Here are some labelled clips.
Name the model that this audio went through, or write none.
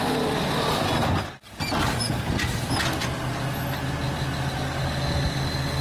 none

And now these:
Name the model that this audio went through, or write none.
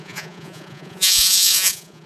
vocoder, Vocos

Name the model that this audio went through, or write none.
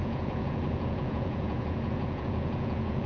vocoder, Vocos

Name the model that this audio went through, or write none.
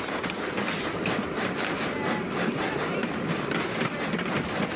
none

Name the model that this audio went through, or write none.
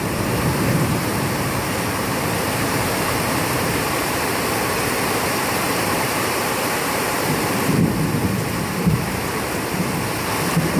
vocoder, BigVGAN v2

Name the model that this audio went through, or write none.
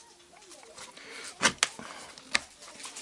none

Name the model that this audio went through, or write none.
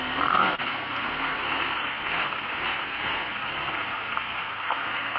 codec, SNAC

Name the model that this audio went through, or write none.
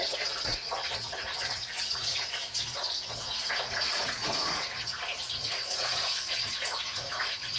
vocoder, Vocos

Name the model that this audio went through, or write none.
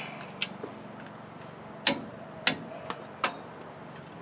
none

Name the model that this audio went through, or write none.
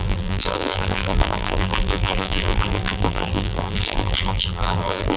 vocoder, BigVGAN v2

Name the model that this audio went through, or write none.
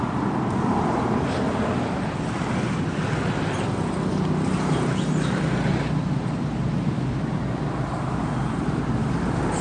none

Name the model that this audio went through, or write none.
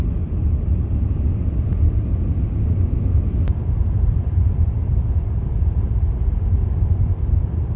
vocoder, BigVGAN v2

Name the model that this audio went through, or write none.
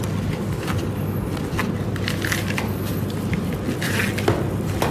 none